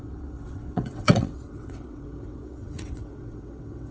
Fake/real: fake